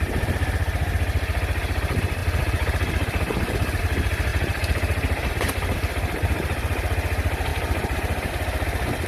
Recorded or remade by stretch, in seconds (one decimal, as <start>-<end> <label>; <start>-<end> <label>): 0.0-2.2 recorded; 2.2-3.8 remade; 3.8-4.3 recorded; 4.3-5.3 remade; 5.3-7.5 recorded; 7.5-8.3 remade; 8.3-9.1 recorded